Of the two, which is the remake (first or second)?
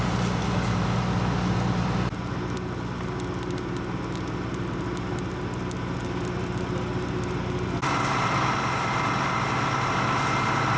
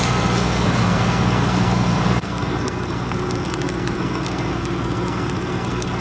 second